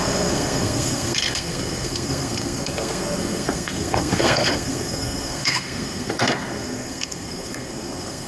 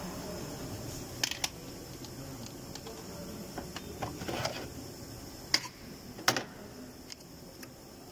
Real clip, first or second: second